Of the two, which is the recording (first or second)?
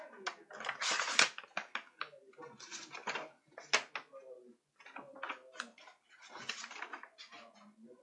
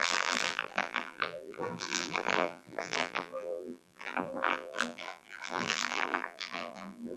first